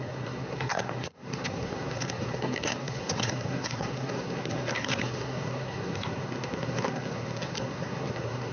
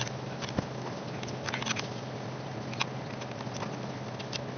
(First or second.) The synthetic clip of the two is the first